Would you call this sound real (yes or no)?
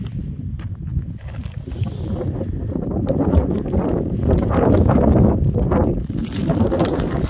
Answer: yes